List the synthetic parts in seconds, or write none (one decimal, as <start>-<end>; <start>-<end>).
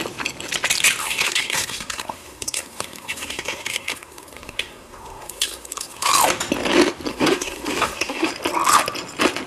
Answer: 1.0-6.1; 7.1-8.3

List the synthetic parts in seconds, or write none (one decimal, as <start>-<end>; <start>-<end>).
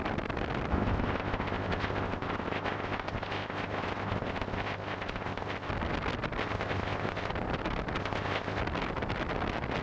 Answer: 0.7-5.7; 6.4-7.3; 8.0-8.6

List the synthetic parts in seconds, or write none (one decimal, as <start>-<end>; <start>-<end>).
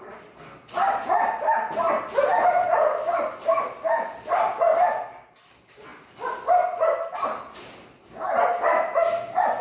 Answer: none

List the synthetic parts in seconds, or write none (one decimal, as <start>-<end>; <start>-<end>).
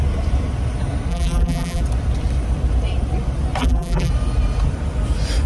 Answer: 1.1-1.8; 3.6-4.1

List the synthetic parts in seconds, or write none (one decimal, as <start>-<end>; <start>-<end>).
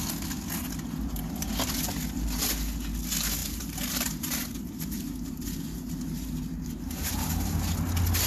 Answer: 3.4-7.1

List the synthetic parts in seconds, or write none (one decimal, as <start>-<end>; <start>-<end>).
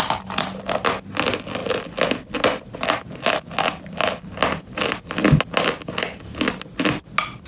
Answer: none